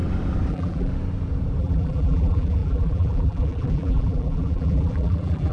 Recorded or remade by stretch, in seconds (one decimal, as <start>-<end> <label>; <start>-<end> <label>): 0.0-0.5 recorded; 0.5-0.9 remade; 0.9-1.6 recorded; 1.6-5.5 remade